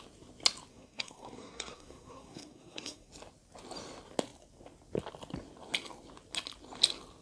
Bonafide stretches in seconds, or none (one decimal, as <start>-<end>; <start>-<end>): 0.0-0.7; 3.1-7.2